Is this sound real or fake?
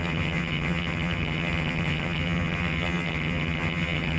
fake